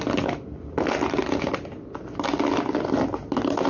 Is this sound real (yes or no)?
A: yes